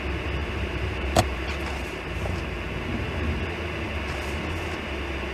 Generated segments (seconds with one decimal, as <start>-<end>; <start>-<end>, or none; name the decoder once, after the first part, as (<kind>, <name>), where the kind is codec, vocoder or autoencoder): 0.4-3.3 (vocoder, BigVGAN v2)